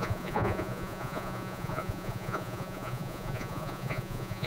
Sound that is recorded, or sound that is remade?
remade